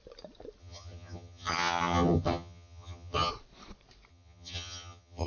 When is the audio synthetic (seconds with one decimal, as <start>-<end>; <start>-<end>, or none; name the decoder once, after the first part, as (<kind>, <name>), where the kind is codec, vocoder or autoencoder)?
0.6-3.3 (vocoder, HiFi-GAN); 4.1-5.3